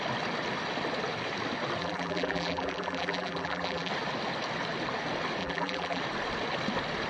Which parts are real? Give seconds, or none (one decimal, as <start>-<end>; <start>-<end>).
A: 0.0-1.8; 3.9-5.4; 6.0-7.1